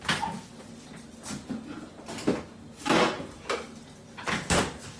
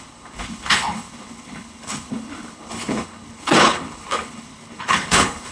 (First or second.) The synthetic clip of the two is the second